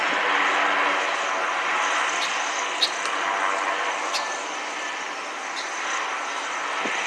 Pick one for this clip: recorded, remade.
recorded